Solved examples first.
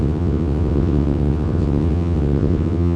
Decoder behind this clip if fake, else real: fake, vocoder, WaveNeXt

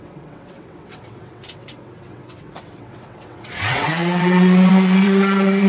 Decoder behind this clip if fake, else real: fake, vocoder, WaveNeXt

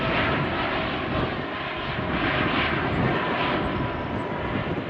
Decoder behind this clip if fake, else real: real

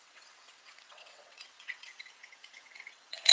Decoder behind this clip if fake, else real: fake, vocoder, WaveNeXt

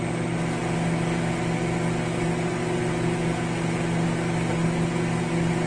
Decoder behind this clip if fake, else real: real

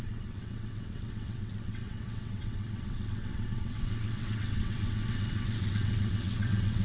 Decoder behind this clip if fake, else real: fake, vocoder, WaveNeXt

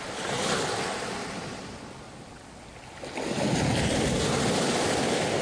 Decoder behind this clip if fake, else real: real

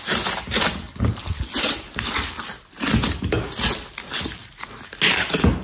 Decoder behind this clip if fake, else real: real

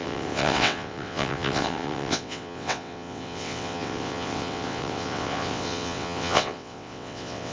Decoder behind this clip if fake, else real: fake, vocoder, WaveNeXt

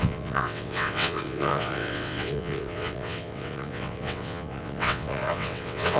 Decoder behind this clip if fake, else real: fake, vocoder, WaveNeXt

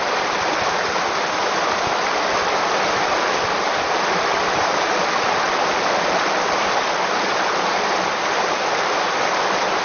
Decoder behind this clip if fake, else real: real